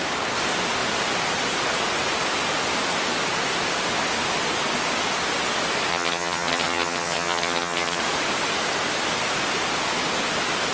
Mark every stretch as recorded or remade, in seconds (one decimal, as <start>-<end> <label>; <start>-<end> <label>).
0.0-5.9 recorded; 5.9-8.0 remade; 8.0-10.7 recorded